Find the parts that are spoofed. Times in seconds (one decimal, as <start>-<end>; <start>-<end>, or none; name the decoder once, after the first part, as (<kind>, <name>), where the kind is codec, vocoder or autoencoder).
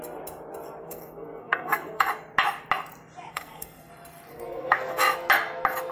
0.8-2.1 (codec, SNAC); 3.3-3.9; 4.3-5.0